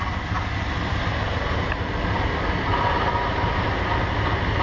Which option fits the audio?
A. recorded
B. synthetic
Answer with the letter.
A